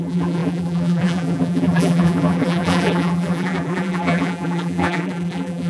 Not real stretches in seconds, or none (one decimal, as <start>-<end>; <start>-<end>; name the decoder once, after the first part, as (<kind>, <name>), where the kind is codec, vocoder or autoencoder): 0.0-5.7 (vocoder, BigVGAN v2)